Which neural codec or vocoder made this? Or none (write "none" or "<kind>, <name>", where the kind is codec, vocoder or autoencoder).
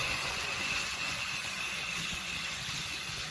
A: vocoder, Vocos